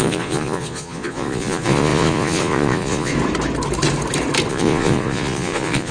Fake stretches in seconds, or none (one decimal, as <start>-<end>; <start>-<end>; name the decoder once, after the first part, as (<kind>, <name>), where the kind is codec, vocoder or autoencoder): 0.0-3.1 (vocoder, Vocos); 4.5-5.9